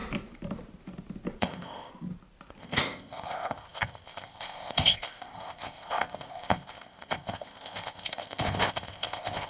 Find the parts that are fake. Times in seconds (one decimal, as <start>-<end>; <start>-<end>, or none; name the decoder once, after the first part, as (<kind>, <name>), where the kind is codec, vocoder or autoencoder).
1.4-1.9 (codec, ZipCodec); 2.6-9.5